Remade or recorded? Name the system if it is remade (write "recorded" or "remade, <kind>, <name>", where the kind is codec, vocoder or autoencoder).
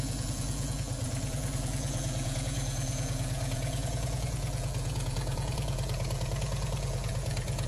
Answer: remade, vocoder, Vocos